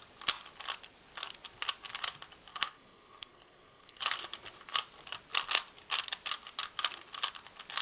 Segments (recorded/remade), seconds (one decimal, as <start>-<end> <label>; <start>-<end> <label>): 0.0-2.5 recorded; 2.5-4.0 remade; 4.0-7.8 recorded